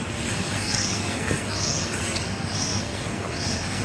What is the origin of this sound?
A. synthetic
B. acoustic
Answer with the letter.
A